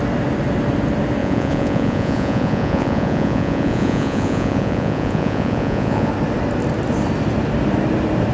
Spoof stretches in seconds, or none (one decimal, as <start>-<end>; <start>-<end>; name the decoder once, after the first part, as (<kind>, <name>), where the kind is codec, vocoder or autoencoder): 1.2-6.1 (vocoder, Vocos)